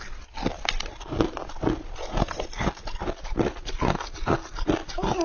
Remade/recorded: recorded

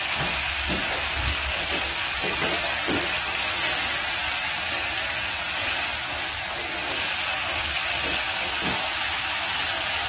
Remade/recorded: recorded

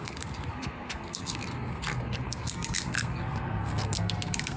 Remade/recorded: remade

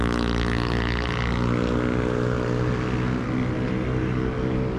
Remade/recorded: recorded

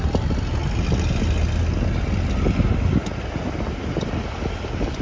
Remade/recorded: recorded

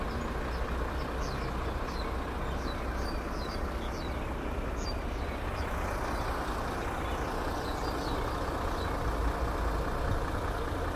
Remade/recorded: recorded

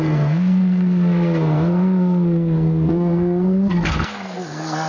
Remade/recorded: remade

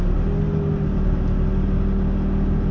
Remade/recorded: recorded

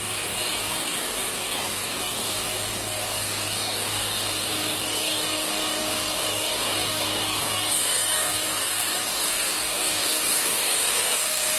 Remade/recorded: remade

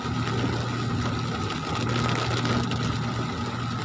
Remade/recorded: recorded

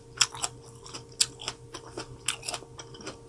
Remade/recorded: recorded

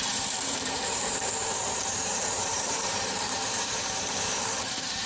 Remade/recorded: remade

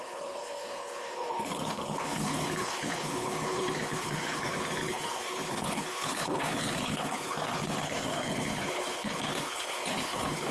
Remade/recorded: remade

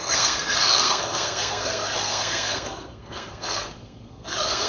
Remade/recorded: remade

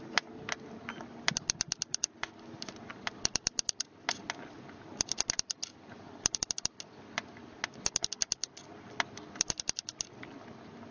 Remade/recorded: recorded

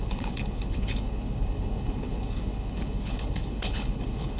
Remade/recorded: remade